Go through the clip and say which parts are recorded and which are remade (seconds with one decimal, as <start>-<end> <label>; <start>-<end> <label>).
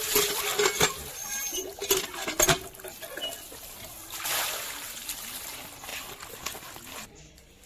0.0-7.7 recorded